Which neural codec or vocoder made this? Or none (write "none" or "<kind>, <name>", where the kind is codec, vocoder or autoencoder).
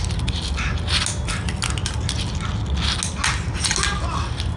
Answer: none